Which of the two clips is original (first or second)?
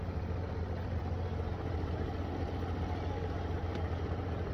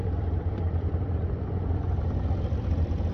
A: first